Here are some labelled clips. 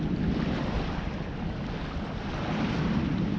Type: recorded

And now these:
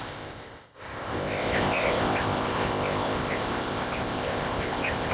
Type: remade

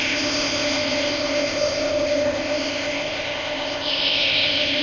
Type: remade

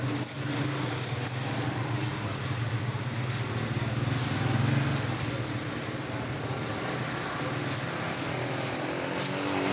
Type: recorded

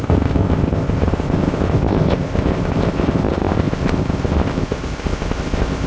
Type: remade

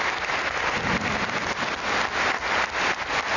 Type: recorded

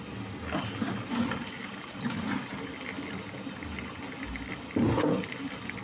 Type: recorded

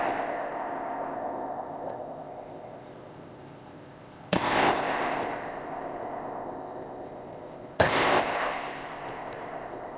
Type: remade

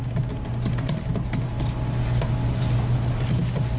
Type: recorded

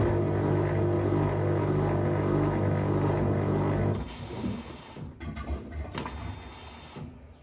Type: recorded